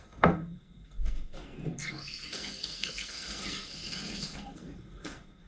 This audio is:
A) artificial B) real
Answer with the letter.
A